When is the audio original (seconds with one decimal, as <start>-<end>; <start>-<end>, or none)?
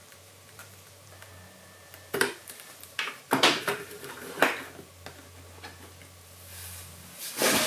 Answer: 4.4-7.7